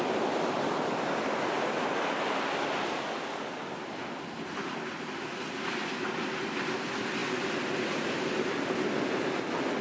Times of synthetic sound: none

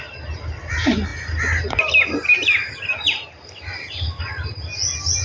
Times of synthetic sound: none

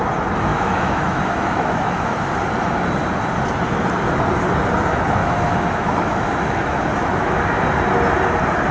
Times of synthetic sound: 0.5-2.3 (autoencoder, DAC-VAE); 5.2-7.4

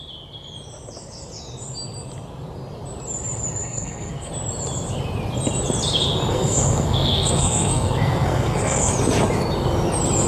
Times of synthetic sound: 3.6-4.3 (codec, SNAC); 6.3-8.9

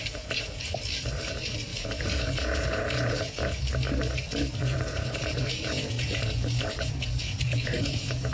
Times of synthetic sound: 1.7-3.6 (vocoder, Vocos); 4.6-8.3

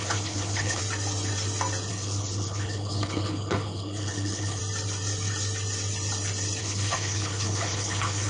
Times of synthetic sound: 0.0-0.8 (codec, HILCodec); 1.9-4.6; 6.6-8.3